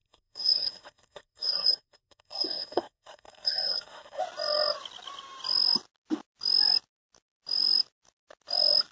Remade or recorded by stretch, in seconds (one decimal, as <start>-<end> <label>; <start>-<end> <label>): 0.0-4.2 remade; 4.2-8.9 recorded